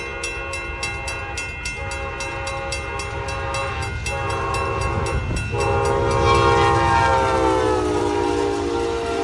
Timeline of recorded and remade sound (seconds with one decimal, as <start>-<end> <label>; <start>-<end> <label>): 0.0-9.2 recorded